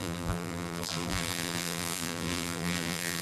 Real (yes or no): no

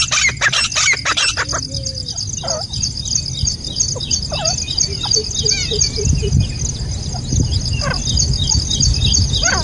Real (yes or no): yes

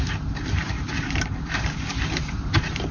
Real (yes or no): yes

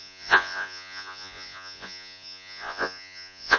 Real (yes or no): no